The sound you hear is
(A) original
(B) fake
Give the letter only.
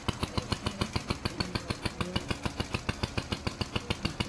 A